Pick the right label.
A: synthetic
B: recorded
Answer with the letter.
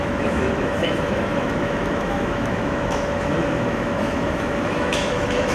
A